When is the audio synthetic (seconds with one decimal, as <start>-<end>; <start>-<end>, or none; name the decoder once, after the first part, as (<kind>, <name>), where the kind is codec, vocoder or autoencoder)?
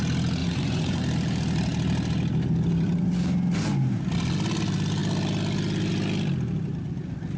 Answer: 0.4-1.0 (vocoder, Vocos)